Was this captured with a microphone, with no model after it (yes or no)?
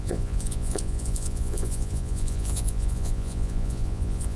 no